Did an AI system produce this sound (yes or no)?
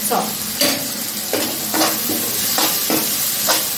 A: no